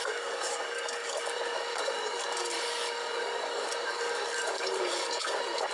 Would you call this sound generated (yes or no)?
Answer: yes